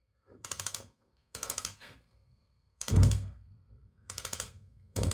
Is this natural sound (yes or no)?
no